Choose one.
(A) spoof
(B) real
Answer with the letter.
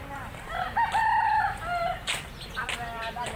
B